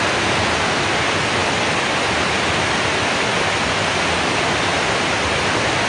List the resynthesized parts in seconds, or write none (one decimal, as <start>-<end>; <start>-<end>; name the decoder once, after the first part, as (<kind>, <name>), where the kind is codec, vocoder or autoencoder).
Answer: none